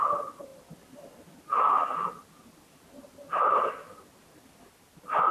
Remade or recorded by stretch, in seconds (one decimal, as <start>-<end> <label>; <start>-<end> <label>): 0.0-5.3 recorded